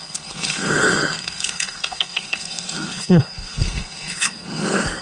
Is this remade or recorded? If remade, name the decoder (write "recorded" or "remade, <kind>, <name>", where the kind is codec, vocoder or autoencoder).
remade, codec, SNAC